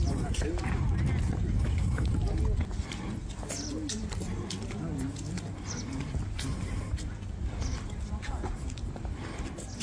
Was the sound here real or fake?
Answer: real